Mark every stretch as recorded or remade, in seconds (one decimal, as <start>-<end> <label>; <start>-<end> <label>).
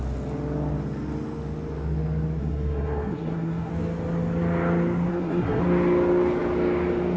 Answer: 0.0-2.4 recorded; 2.4-3.7 remade; 3.7-5.1 recorded; 5.1-5.6 remade; 5.6-7.2 recorded